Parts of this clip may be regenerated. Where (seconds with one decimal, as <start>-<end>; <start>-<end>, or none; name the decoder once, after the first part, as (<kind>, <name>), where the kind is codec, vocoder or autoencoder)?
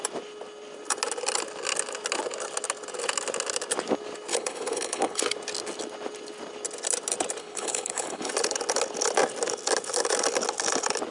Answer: 4.3-5.2 (codec, HILCodec); 7.4-8.3